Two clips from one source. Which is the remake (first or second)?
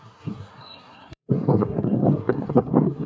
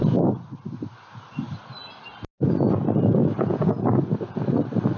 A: first